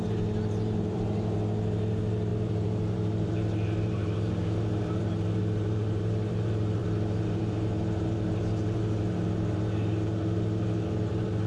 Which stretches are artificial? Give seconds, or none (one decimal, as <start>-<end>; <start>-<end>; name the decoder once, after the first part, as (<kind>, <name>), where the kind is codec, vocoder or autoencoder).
0.0-11.5 (vocoder, BigVGAN v2)